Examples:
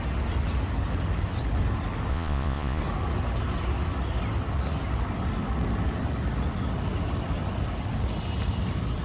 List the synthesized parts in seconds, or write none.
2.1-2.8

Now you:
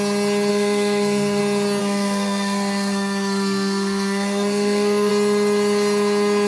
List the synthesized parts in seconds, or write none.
0.5-1.4; 1.8-5.1

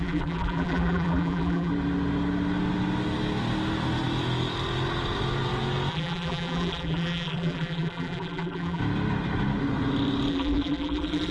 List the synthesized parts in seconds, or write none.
0.0-1.7; 5.9-8.8; 10.3-11.3

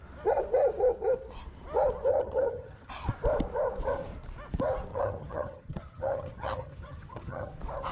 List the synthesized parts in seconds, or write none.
2.1-2.9; 4.9-7.5

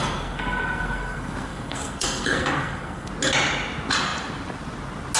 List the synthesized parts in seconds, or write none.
0.0-3.1

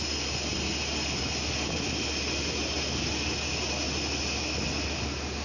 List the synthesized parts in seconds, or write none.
none

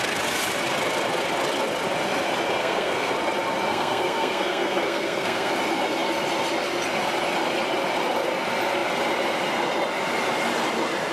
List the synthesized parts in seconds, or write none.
2.6-3.1; 3.7-5.5